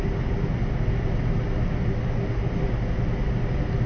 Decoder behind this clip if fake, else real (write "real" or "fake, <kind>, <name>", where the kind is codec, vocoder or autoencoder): real